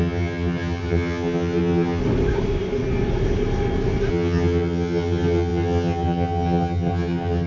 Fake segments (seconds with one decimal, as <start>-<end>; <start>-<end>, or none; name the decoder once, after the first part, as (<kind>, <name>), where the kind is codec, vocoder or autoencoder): 0.0-2.0 (vocoder, HiFi-GAN); 4.1-7.5